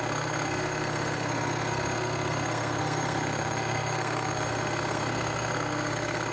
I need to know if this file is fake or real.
fake